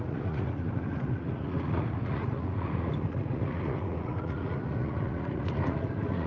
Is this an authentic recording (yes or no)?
no